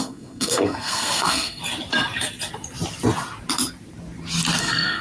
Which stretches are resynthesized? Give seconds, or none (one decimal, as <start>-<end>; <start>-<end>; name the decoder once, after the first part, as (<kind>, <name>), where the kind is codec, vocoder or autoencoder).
0.0-1.6 (codec, SNAC); 4.6-5.0